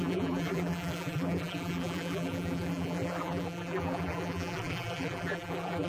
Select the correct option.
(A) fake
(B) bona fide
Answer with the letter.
A